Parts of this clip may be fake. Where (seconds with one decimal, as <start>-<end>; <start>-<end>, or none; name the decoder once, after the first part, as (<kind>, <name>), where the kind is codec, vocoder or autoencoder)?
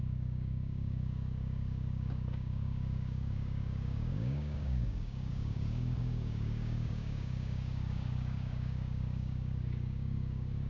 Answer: 0.0-10.7 (codec, DAC)